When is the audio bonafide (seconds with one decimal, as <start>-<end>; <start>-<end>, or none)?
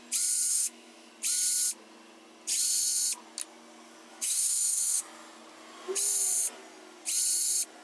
0.0-0.5; 1.1-4.1; 5.0-7.8